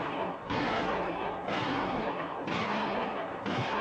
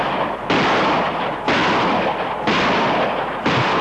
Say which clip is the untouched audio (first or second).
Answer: second